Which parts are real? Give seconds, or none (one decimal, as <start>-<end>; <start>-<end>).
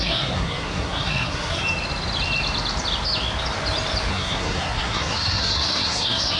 1.6-4.1